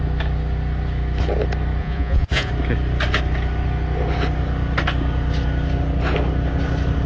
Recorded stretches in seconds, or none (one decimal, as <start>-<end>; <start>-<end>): 0.0-1.8; 2.5-7.1